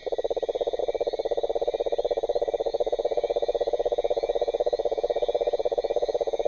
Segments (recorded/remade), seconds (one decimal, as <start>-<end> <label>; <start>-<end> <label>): 0.0-2.7 recorded; 2.7-6.5 remade